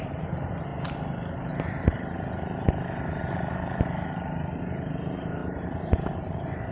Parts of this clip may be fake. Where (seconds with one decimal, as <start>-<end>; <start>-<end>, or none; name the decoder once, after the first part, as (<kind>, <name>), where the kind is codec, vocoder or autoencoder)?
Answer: 0.0-6.7 (vocoder, BigVGAN v2)